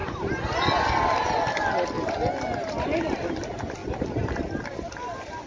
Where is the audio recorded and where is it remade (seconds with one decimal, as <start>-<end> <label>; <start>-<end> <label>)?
0.0-5.5 recorded